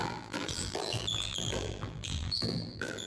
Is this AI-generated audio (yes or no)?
yes